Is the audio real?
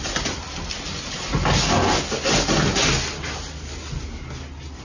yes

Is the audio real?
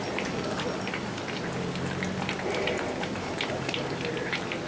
yes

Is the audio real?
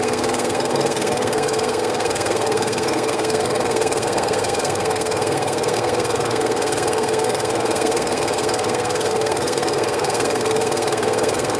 no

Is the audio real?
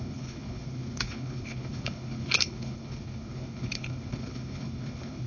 no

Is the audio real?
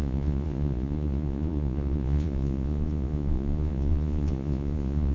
no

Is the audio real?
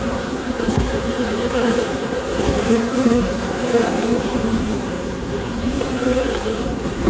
no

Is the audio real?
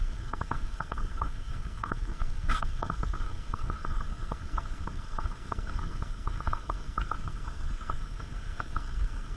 no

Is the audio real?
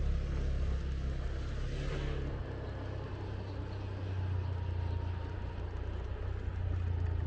yes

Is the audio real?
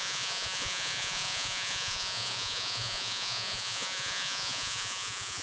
no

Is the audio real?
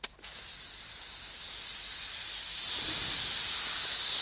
yes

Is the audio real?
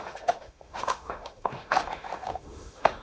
no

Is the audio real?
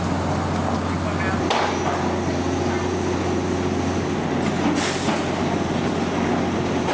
yes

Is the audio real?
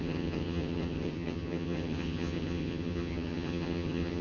no